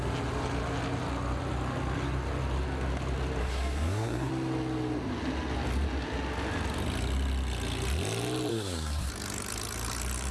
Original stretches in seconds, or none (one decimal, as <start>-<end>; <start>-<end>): 0.0-3.4; 4.3-8.5; 9.1-10.3